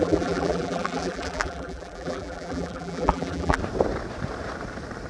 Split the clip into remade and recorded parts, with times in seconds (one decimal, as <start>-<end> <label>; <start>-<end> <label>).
0.0-3.6 remade; 3.6-5.1 recorded